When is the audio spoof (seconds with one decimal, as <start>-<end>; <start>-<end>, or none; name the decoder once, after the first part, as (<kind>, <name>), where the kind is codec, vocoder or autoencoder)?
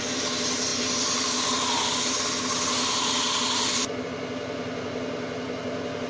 none